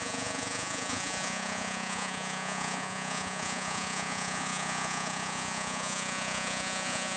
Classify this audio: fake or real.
fake